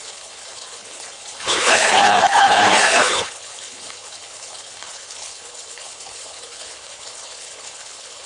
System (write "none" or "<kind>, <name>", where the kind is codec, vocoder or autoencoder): codec, HILCodec